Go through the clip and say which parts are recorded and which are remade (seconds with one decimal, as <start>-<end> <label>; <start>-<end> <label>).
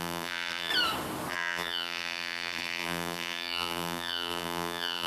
0.0-0.7 remade; 0.7-1.3 recorded; 1.3-5.1 remade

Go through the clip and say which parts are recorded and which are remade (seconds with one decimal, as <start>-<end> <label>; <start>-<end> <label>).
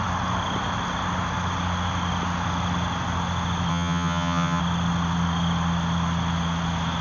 0.0-3.7 recorded; 3.7-4.6 remade; 4.6-7.0 recorded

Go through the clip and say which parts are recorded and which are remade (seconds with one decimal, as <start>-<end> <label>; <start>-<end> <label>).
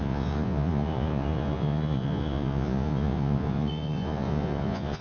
0.0-5.0 remade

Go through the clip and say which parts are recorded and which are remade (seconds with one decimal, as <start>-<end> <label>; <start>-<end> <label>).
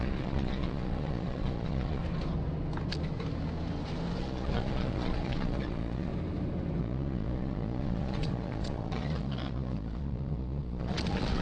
0.0-2.0 remade; 2.0-4.2 recorded; 4.2-6.1 remade; 6.1-6.8 recorded; 6.8-11.4 remade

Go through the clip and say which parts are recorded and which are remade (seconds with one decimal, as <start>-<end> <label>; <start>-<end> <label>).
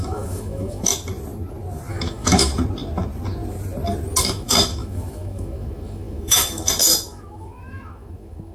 0.0-0.9 remade; 0.9-1.9 recorded; 1.9-2.5 remade; 2.5-4.2 recorded; 4.2-8.5 remade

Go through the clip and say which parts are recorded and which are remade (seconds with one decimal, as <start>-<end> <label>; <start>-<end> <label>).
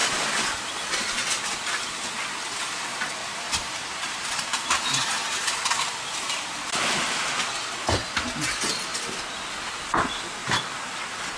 0.0-2.9 recorded; 2.9-6.7 remade; 6.7-10.4 recorded; 10.4-11.0 remade; 11.0-11.4 recorded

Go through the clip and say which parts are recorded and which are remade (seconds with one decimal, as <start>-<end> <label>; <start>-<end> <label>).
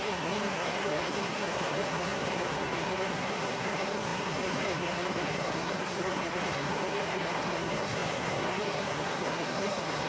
0.0-10.1 remade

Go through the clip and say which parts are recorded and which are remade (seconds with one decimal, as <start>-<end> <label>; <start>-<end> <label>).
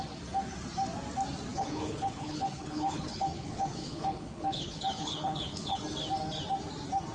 0.0-1.5 recorded; 1.5-5.8 remade; 5.8-7.1 recorded